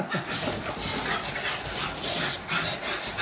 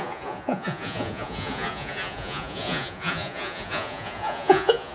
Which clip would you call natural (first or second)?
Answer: first